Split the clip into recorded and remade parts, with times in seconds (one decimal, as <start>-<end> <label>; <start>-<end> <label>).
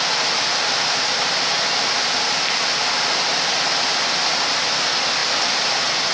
0.0-6.1 recorded